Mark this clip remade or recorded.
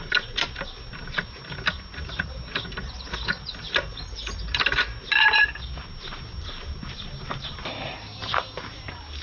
recorded